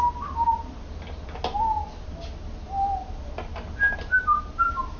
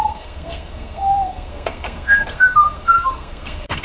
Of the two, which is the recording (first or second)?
first